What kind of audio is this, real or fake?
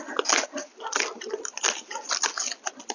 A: real